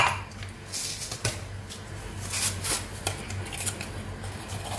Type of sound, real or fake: real